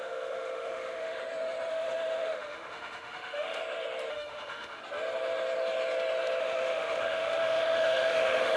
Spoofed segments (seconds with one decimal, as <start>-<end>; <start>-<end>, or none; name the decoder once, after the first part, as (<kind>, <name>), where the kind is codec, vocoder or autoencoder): 0.0-1.2 (autoencoder, DAC-VAE); 1.7-3.6; 4.1-4.8; 6.4-8.6